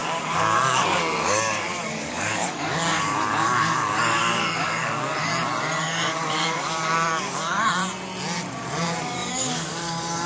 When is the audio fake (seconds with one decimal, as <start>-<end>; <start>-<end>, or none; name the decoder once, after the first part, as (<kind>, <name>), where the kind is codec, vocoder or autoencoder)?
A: 0.0-5.3 (codec, DAC); 5.8-7.8; 9.0-10.3